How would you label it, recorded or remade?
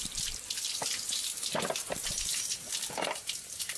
remade